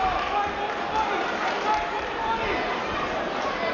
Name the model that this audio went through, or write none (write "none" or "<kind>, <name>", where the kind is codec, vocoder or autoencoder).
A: none